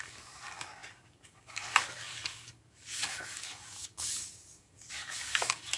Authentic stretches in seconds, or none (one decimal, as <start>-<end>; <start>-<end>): none